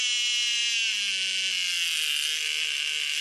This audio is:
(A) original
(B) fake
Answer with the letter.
A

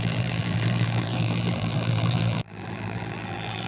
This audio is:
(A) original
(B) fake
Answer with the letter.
B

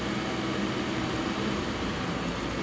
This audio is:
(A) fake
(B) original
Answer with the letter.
A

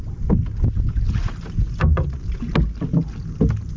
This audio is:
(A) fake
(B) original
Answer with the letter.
B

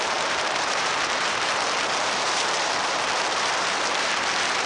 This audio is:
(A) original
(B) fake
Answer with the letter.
B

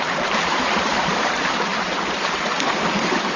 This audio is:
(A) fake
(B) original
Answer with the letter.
A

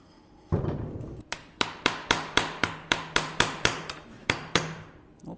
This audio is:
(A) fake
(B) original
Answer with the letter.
A